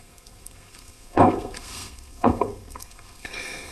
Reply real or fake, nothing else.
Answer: fake